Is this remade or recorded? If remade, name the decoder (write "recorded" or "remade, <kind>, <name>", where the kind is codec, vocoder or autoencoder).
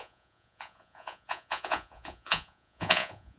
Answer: remade, vocoder, Vocos